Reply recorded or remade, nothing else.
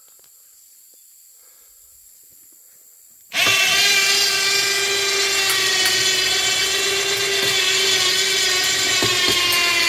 recorded